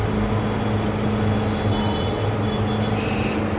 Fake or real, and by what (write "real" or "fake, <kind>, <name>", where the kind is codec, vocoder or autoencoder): real